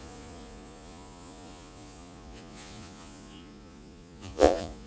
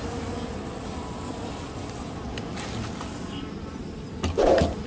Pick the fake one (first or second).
first